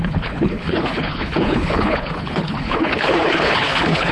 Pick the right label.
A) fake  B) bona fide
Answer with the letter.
A